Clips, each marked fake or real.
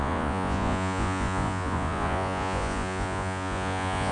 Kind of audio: fake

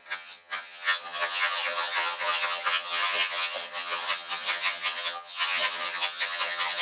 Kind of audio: fake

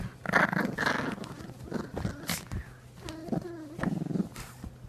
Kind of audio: real